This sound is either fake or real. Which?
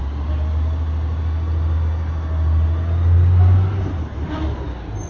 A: real